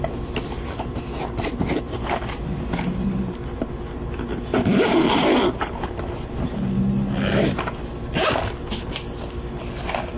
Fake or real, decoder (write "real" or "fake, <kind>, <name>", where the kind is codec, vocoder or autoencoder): real